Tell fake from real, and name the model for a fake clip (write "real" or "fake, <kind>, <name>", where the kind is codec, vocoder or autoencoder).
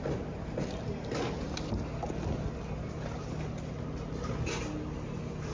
real